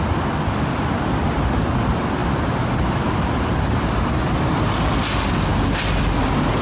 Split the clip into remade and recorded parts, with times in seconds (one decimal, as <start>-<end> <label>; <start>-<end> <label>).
0.0-2.2 recorded; 2.2-4.7 remade; 4.7-6.6 recorded